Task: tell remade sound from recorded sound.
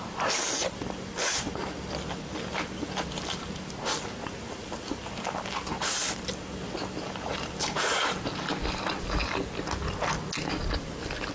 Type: recorded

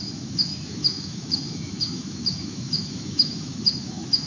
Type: remade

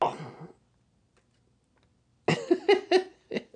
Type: recorded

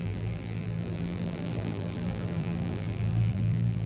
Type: remade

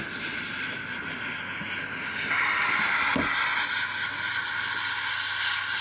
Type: recorded